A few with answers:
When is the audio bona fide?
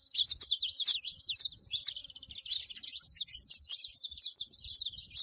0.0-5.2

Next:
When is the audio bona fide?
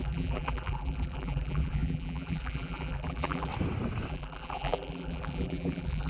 3.5-4.1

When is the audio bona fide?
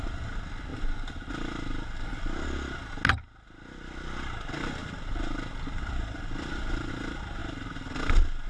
0.0-4.8; 6.9-8.5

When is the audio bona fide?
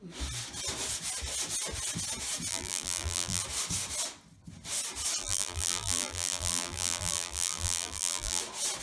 0.0-2.5; 3.4-5.2; 8.4-8.8